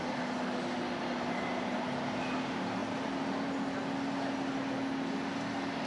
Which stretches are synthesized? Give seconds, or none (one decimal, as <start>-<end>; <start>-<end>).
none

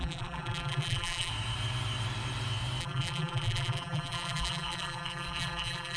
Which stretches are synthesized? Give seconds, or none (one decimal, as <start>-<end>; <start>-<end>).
0.0-1.3; 2.8-6.0

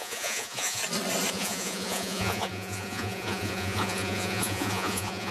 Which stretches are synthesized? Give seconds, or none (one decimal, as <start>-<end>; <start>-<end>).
0.0-0.8; 1.3-5.3

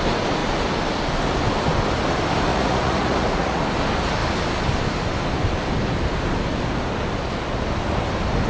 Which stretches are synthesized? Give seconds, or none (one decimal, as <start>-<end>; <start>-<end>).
2.5-3.6